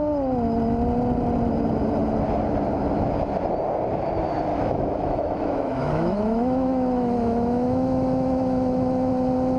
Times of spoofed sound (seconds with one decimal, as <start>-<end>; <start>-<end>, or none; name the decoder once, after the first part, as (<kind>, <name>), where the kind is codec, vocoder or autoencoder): 4.5-9.1 (autoencoder, DAC-VAE)